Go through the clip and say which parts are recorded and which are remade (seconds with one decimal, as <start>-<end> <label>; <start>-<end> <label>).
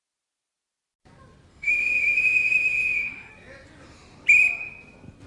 0.0-1.5 recorded; 1.5-3.3 remade; 3.3-5.3 recorded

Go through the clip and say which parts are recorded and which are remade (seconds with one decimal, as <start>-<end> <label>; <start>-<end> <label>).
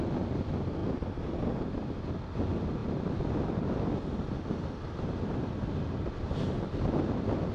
0.0-7.5 recorded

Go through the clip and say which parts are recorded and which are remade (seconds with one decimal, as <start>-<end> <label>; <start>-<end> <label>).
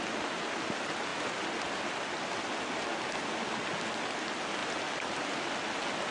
0.0-6.1 recorded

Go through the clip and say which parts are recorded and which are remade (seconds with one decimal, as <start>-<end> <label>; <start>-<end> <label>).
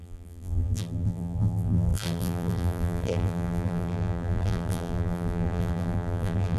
0.0-6.6 remade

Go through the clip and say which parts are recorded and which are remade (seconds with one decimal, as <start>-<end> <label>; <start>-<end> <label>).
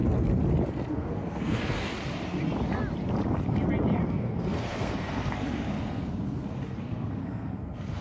0.0-0.9 recorded; 0.9-1.9 remade; 1.9-4.1 recorded; 4.1-8.0 remade